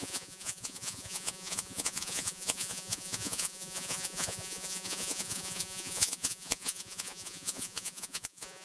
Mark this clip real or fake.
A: fake